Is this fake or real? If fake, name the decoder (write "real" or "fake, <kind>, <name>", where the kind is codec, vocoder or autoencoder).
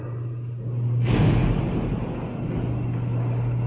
real